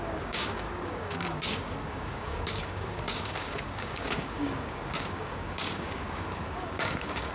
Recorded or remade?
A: remade